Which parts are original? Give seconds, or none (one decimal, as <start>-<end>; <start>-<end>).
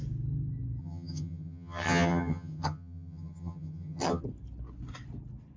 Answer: 0.0-0.8; 4.2-5.6